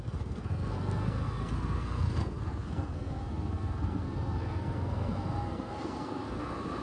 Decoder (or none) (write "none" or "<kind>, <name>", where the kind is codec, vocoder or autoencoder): codec, SNAC